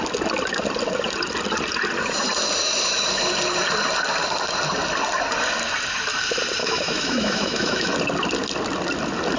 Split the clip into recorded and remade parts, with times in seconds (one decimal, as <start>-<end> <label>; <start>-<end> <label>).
0.0-6.6 recorded; 6.6-7.9 remade; 7.9-9.4 recorded

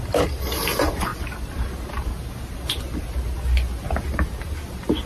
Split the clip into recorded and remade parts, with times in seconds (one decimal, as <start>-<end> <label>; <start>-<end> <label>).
0.0-5.1 recorded

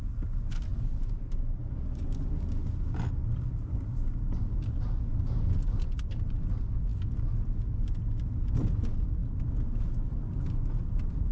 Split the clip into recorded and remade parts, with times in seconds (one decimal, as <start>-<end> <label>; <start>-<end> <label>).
0.0-11.3 recorded